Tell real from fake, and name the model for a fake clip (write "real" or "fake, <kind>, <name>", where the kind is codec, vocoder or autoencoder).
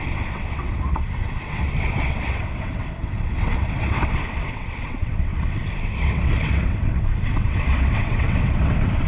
fake, vocoder, WaveNeXt